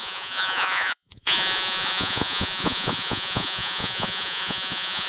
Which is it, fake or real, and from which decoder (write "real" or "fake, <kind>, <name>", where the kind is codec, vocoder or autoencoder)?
fake, vocoder, Vocos